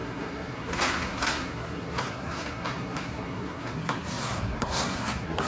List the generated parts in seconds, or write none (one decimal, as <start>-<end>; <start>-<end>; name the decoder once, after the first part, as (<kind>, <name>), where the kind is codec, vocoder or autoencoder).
0.0-5.5 (codec, SNAC)